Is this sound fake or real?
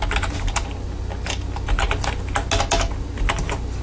real